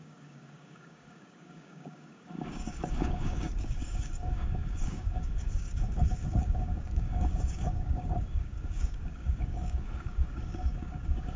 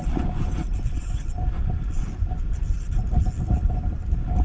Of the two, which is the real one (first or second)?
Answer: second